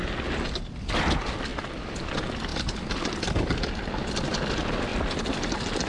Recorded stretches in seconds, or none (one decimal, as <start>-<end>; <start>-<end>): 0.0-5.9